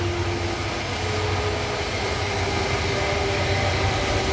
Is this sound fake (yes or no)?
no